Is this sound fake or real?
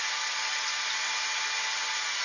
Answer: real